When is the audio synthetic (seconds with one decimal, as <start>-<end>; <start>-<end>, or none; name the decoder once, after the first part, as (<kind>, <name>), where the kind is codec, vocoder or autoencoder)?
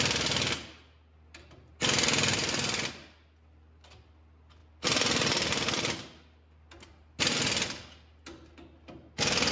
none